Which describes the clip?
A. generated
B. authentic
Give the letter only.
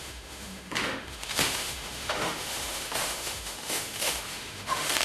A